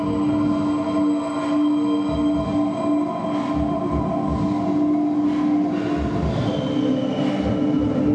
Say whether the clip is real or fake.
real